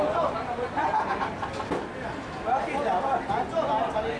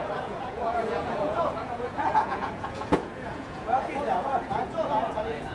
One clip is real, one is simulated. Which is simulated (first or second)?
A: second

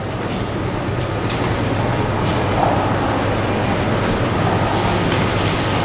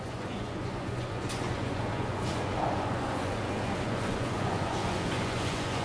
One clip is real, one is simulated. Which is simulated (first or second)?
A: second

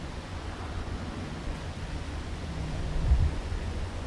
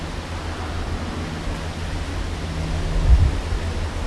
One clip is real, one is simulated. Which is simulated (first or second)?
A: first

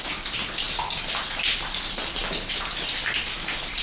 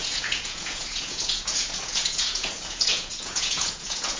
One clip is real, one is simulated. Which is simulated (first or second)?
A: second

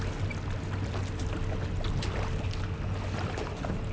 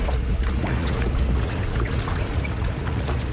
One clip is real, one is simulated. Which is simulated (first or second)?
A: second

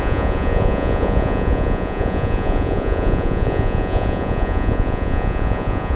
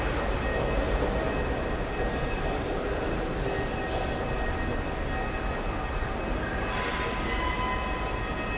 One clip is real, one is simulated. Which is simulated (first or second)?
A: first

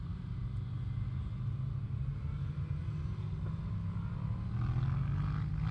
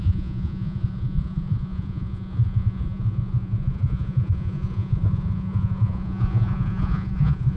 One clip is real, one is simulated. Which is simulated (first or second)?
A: second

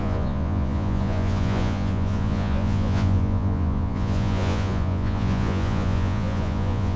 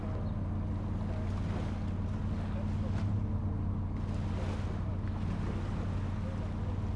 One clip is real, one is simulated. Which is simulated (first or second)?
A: first